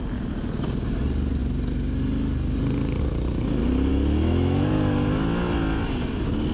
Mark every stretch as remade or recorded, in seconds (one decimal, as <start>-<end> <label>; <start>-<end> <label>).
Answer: 0.0-3.9 recorded; 3.9-4.7 remade; 4.7-6.5 recorded